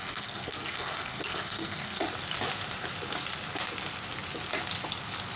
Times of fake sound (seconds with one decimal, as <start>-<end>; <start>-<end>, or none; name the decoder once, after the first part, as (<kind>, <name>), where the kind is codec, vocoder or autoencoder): 0.0-2.0 (codec, SNAC)

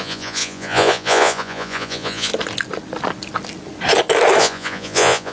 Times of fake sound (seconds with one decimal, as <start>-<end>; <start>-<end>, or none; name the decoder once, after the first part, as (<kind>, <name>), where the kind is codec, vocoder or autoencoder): 0.0-2.3 (vocoder, Vocos); 4.4-5.3

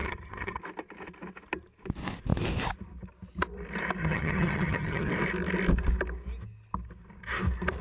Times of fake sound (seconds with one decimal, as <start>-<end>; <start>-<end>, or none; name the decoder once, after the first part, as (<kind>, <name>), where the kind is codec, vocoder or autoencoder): 0.0-0.6 (vocoder, HiFi-GAN); 4.0-5.1

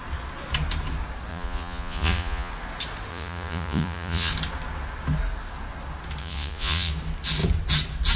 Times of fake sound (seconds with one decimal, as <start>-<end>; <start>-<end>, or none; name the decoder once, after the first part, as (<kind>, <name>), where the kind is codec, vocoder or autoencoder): 1.3-2.5 (vocoder, Vocos); 3.1-4.3; 6.2-6.9

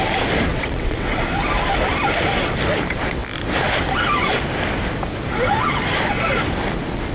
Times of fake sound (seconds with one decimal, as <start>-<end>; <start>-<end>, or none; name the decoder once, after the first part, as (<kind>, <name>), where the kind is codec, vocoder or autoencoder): 0.5-1.2 (vocoder, WaveNeXt)

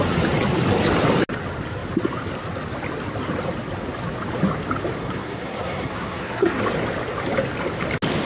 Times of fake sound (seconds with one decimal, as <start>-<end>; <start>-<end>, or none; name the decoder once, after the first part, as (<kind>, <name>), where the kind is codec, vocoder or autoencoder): 5.0-6.6 (codec, SNAC)

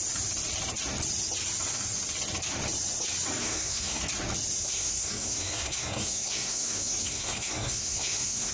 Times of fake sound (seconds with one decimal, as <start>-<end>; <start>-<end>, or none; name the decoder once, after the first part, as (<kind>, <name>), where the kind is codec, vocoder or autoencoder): 3.4-4.0 (codec, SNAC); 4.6-8.5